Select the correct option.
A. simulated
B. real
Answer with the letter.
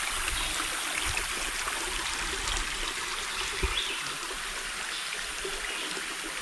B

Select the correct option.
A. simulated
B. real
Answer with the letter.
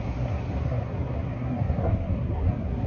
A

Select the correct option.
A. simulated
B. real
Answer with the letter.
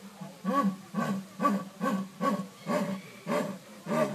B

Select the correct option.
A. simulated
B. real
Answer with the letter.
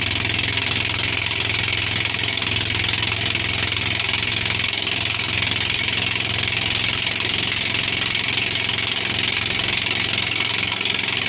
B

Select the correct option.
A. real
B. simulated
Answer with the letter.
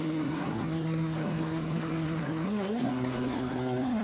B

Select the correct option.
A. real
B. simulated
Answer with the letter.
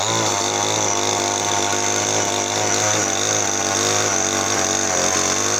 A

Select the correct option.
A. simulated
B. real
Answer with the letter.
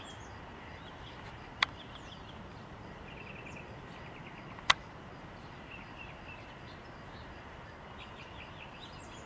B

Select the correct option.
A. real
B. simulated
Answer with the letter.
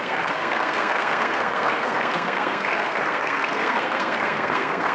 B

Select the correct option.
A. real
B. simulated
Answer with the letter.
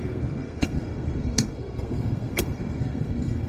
B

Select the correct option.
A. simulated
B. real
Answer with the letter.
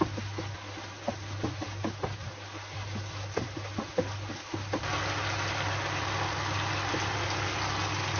B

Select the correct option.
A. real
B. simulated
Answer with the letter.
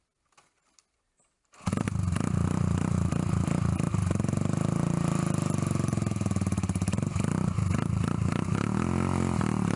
A